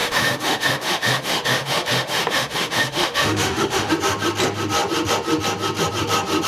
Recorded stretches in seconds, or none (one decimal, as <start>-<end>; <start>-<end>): 3.9-6.5